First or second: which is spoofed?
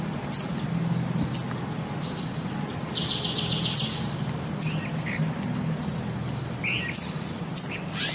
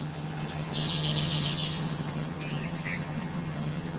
second